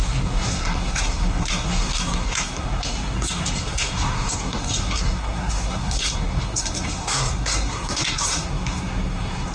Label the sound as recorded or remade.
remade